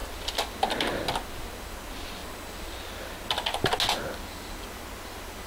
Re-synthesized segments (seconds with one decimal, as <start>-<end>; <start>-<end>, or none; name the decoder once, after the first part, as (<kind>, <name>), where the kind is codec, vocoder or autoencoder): none